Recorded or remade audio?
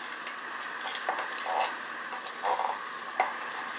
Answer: recorded